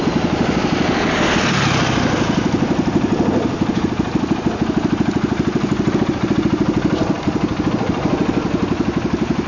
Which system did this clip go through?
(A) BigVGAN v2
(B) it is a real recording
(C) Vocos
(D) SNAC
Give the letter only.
B